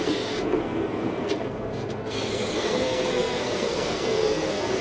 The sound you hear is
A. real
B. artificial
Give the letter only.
B